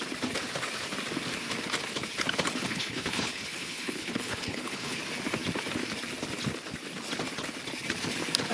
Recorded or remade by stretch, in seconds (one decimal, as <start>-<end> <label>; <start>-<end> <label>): 0.0-2.7 recorded; 2.7-5.0 remade; 5.0-8.5 recorded